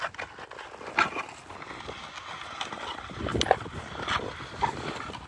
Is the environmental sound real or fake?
real